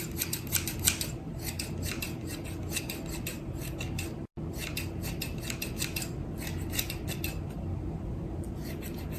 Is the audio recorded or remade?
recorded